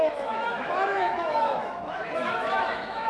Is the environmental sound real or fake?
fake